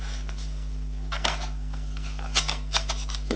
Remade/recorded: remade